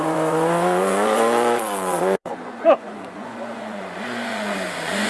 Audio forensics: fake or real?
fake